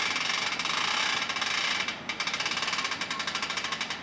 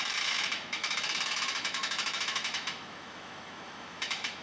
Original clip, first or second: first